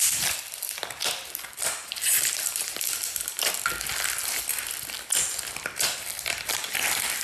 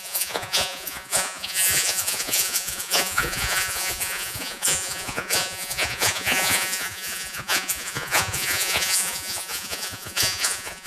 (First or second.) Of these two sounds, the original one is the first